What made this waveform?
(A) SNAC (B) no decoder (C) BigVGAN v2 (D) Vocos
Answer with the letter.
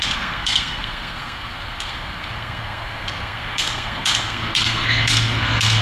A